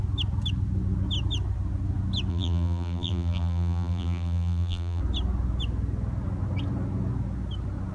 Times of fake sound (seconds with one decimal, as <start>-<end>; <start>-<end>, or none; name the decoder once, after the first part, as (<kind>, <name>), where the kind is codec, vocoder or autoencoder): 2.3-5.0 (vocoder, BigVGAN v2)